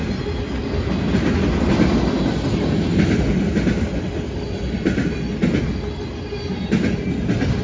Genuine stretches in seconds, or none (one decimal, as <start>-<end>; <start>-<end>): 0.0-7.6

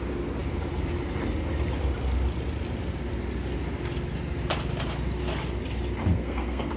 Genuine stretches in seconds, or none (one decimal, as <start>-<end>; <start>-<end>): 0.0-6.1

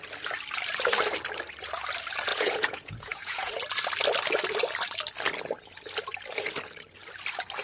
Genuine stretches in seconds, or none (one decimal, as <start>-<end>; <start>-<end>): 0.0-2.3; 3.5-7.6

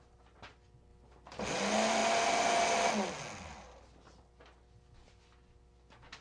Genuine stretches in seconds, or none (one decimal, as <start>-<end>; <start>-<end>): 0.0-6.2

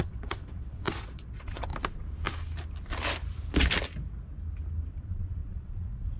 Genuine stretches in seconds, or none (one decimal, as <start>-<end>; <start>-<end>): 1.7-4.9